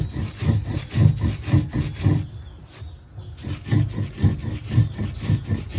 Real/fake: real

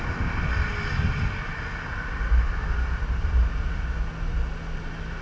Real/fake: real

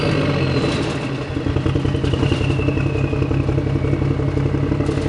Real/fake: real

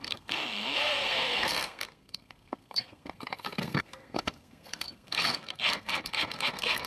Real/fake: fake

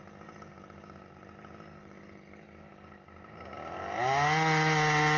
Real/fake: real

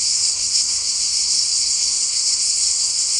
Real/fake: fake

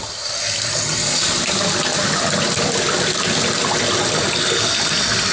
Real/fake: real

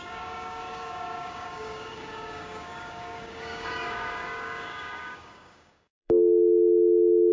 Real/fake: fake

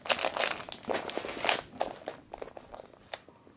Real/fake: real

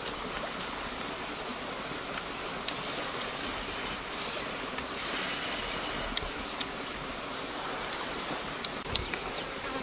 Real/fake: real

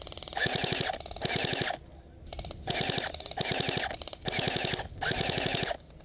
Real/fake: real